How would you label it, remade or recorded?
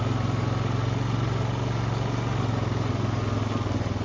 recorded